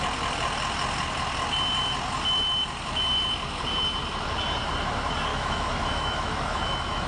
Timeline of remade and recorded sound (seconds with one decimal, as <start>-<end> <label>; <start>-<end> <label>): 0.0-5.3 recorded; 5.3-7.1 remade